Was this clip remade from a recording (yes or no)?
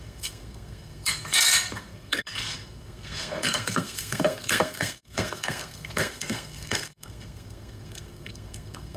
yes